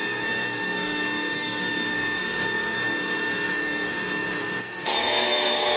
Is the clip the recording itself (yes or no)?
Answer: no